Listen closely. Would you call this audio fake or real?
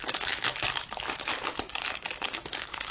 fake